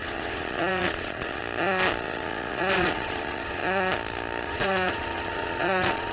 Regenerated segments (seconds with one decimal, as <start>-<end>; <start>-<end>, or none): 0.0-1.4; 2.0-3.6; 4.4-6.1